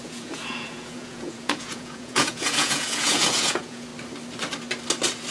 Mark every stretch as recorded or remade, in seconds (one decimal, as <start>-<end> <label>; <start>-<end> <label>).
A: 0.0-3.9 remade; 3.9-5.3 recorded